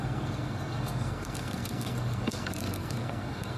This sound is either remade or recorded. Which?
remade